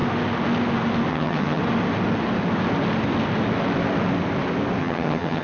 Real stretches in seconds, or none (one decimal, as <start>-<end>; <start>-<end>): 0.0-1.1; 1.6-4.8